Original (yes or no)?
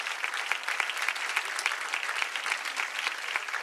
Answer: yes